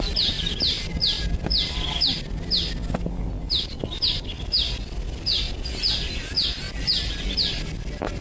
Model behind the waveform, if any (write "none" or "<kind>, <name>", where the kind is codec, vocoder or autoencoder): none